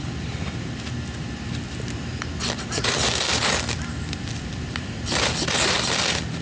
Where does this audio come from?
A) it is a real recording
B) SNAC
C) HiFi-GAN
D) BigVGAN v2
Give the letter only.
D